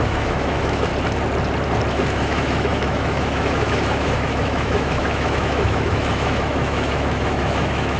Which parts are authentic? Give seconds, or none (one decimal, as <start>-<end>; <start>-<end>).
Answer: 0.9-1.9